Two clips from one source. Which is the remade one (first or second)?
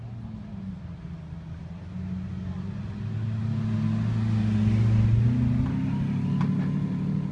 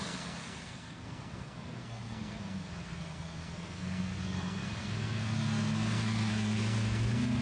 second